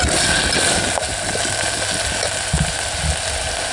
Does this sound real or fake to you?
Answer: real